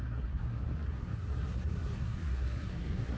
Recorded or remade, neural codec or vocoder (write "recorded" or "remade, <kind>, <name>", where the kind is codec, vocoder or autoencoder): remade, codec, SNAC